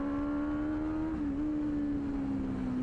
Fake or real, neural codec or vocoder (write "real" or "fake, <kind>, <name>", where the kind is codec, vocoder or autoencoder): real